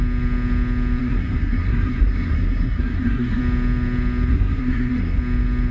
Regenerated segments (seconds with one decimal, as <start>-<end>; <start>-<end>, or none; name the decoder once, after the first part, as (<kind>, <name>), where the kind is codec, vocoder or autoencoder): 1.0-3.4 (codec, SNAC); 4.3-5.2